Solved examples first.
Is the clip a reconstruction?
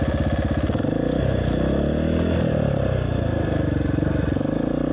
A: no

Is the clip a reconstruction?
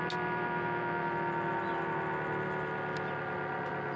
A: no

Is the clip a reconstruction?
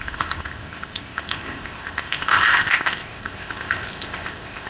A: yes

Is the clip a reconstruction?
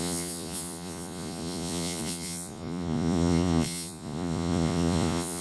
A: yes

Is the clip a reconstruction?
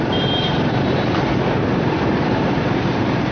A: yes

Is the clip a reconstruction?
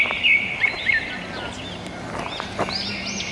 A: no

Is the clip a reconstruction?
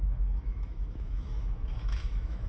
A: yes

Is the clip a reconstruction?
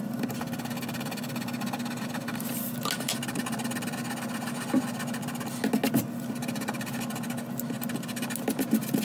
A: no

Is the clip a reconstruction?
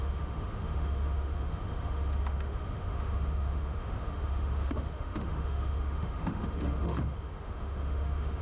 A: yes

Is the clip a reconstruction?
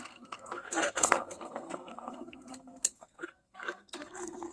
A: yes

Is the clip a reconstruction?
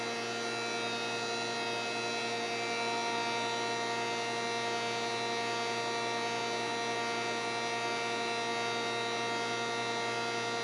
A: no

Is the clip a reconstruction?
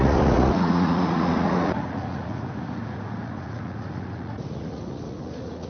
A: yes